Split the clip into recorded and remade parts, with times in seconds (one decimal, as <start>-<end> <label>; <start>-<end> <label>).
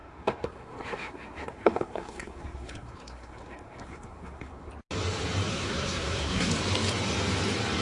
0.0-4.7 remade; 4.7-5.5 recorded; 5.5-6.5 remade; 6.5-7.8 recorded